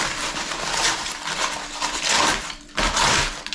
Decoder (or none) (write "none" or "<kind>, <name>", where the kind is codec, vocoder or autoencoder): none